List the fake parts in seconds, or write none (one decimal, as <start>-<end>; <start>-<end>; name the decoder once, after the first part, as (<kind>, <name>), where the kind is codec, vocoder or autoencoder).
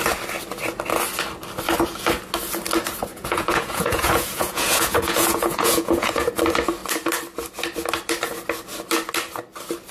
3.1-6.3 (vocoder, Vocos)